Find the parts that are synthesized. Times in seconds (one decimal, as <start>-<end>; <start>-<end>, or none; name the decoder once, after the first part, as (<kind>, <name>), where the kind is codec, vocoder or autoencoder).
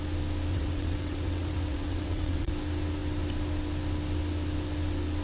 0.5-2.5 (vocoder, WaveNeXt)